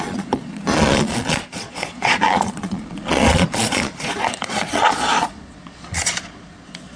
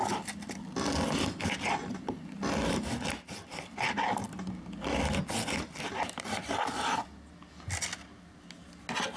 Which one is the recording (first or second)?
second